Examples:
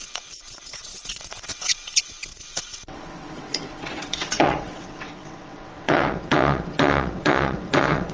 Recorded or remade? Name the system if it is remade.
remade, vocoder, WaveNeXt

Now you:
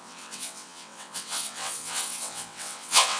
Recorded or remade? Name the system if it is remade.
remade, vocoder, WaveNeXt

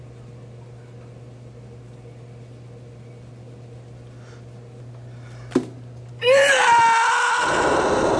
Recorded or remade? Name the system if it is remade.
recorded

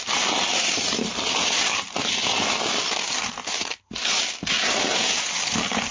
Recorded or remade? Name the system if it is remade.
recorded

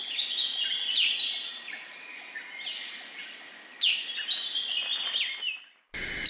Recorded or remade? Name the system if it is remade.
recorded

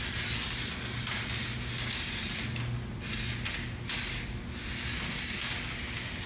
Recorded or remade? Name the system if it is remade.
recorded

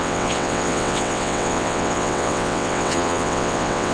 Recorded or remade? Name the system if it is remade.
remade, vocoder, WaveNeXt